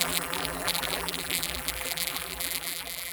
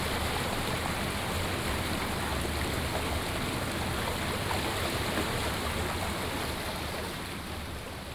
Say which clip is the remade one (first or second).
first